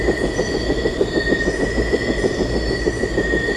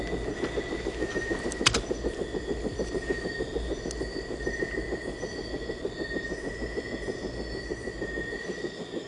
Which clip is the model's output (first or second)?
first